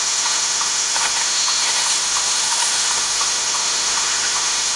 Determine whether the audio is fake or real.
fake